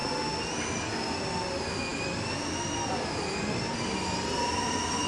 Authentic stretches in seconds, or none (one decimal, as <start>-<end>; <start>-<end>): 0.0-5.1